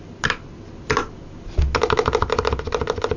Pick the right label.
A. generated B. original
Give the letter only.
B